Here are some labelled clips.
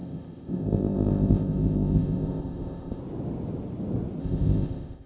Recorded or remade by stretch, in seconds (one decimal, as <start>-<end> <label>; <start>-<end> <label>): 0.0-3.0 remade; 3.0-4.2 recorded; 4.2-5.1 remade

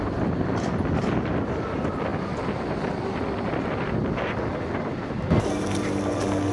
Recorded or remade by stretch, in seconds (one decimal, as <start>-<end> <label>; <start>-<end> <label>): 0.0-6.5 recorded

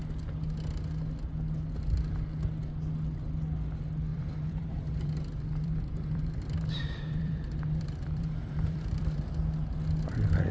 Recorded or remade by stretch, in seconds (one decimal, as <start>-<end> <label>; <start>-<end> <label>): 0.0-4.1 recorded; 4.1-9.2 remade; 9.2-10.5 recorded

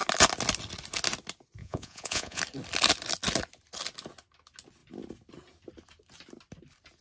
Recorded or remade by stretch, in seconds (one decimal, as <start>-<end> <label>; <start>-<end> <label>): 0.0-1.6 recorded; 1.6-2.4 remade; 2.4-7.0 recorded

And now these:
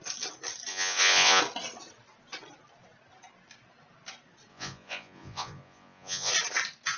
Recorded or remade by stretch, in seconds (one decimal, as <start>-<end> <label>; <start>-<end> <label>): 0.0-0.7 recorded; 0.7-1.4 remade; 1.4-4.5 recorded; 4.5-6.3 remade; 6.3-7.0 recorded

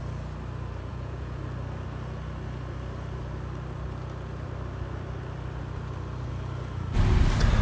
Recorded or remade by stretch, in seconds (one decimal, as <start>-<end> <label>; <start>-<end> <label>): 0.0-0.9 recorded; 0.9-1.4 remade; 1.4-7.6 recorded